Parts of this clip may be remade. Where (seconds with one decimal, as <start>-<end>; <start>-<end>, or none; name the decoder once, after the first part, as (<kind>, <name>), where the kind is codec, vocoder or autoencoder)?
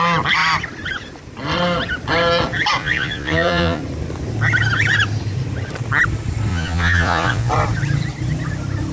2.8-3.8 (vocoder, Vocos); 6.5-7.5